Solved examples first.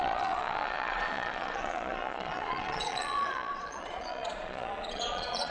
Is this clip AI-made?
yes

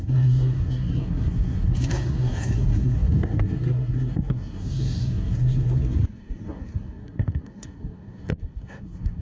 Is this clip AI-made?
yes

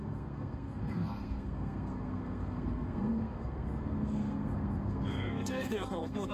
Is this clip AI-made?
yes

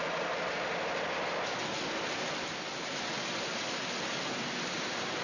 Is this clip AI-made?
no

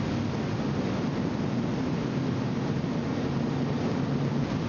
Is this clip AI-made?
no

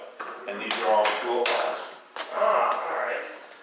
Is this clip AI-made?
yes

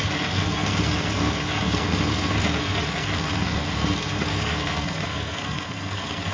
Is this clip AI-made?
yes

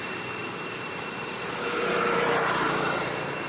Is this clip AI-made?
no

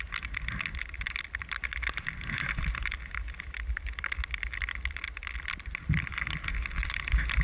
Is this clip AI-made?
no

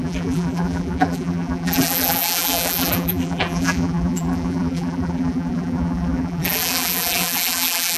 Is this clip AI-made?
yes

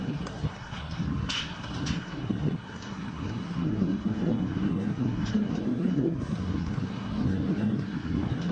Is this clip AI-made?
yes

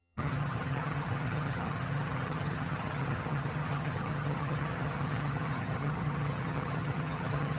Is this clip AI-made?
yes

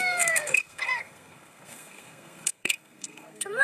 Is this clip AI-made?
yes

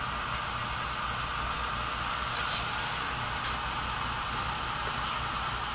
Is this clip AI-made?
no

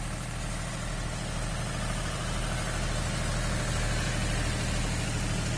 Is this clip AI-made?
no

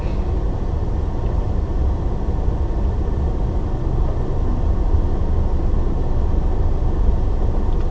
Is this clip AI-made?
no